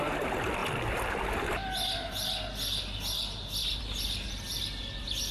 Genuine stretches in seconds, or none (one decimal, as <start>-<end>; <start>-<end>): 0.0-5.3